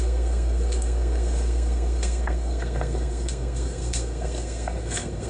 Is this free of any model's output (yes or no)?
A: no